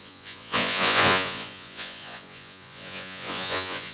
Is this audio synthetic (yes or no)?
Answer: yes